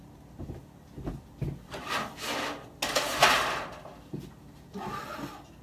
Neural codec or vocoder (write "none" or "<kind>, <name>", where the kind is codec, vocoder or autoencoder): none